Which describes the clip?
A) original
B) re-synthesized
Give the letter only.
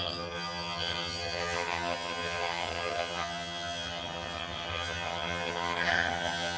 B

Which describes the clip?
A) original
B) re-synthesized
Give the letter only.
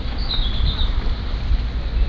A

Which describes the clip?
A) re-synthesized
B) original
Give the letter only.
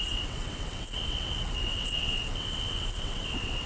A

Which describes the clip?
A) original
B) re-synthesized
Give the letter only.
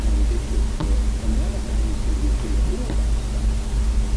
A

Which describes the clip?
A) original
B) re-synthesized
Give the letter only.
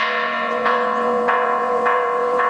B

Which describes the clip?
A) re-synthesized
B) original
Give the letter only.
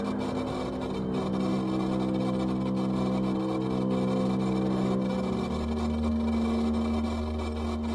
B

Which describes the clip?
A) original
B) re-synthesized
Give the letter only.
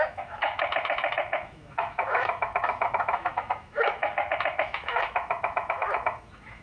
B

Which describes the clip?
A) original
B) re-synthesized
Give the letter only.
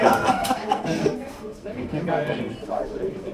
B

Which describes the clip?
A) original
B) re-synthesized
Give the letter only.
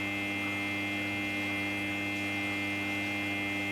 A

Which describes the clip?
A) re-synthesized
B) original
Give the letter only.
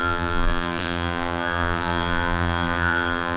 A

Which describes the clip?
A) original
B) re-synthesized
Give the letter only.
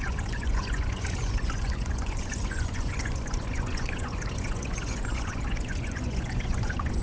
B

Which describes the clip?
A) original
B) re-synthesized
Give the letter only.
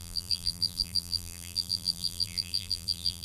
B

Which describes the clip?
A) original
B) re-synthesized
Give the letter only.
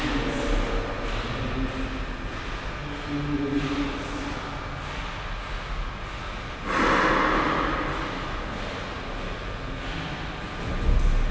A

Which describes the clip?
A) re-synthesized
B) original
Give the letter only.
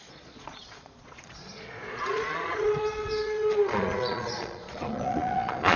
A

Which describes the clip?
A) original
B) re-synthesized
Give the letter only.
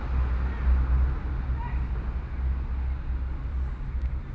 A